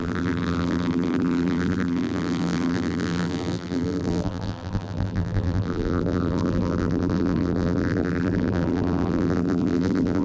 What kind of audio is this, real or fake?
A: fake